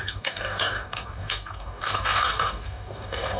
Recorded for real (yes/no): no